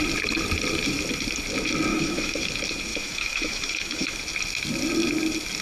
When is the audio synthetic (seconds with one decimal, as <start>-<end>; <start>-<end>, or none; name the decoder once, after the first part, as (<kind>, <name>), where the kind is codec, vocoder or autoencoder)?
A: 1.9-2.5 (autoencoder, DAC-VAE); 2.9-4.2